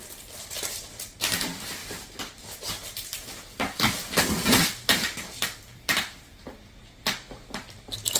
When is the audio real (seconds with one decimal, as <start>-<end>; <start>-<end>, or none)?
1.8-4.3